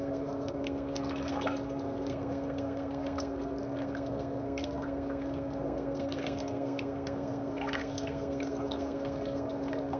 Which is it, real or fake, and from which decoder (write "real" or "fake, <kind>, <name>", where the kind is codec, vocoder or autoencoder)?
fake, codec, SNAC